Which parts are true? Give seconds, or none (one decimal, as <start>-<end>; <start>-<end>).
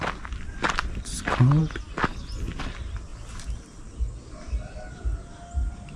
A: 0.0-3.1; 4.0-6.0